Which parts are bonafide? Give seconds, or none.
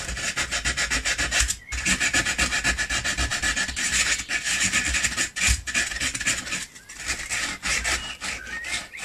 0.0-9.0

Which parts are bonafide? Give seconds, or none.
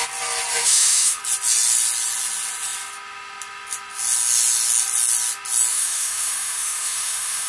0.0-0.5; 1.2-5.7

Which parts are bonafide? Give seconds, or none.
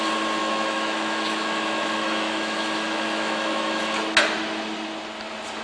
0.0-0.4; 3.8-5.6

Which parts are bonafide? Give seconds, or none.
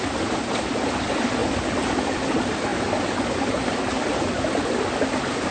0.0-5.5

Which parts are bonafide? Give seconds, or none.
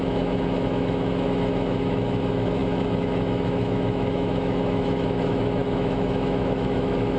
none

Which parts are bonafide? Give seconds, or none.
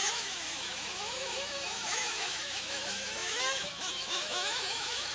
none